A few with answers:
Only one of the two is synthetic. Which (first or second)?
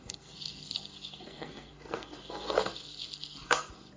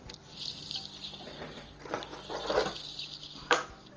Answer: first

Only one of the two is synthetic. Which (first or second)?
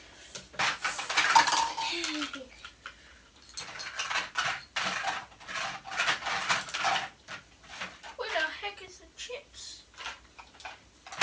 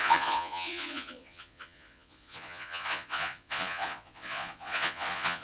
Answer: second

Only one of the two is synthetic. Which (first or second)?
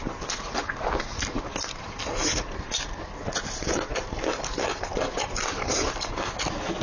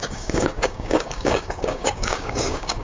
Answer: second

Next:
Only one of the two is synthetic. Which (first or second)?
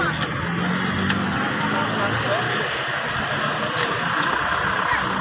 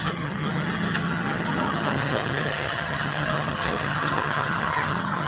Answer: second